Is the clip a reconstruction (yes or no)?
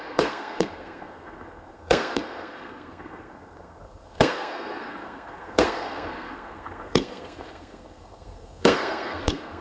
yes